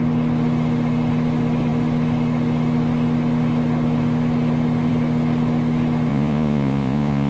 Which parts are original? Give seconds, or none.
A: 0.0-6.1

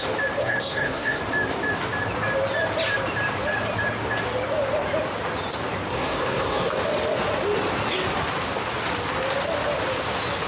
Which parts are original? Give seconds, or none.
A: 0.0-0.4; 1.2-5.9; 6.7-10.5

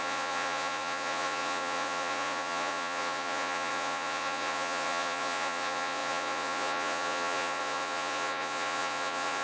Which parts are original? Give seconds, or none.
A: none

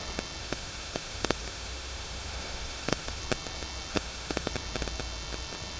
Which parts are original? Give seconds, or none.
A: 0.0-0.4; 3.2-3.9; 4.5-5.8

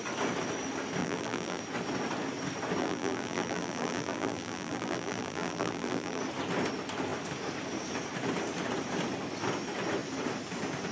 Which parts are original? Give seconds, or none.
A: 0.0-1.0; 1.6-2.8; 6.2-10.9